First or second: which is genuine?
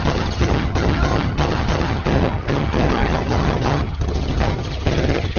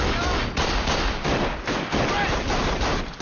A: second